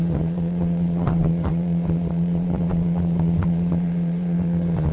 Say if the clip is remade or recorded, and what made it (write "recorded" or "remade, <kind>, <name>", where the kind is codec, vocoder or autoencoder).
remade, vocoder, Vocos